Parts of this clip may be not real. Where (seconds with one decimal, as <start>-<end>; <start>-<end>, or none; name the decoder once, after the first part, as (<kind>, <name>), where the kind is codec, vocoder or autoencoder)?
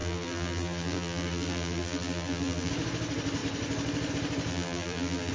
0.0-2.7 (vocoder, BigVGAN v2); 4.5-5.3